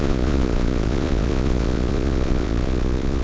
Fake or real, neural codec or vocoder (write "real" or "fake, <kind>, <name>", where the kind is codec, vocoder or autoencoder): fake, vocoder, Vocos